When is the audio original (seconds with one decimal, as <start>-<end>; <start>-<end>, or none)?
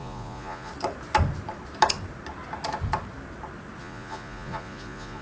0.7-3.8